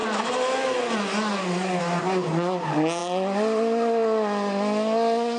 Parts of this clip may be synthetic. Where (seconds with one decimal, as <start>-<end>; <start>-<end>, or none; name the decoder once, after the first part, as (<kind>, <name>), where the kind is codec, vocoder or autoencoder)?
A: none